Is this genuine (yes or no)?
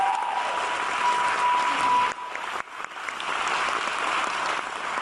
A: yes